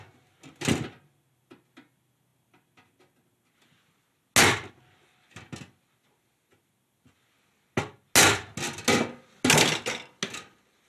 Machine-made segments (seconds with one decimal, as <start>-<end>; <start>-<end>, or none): none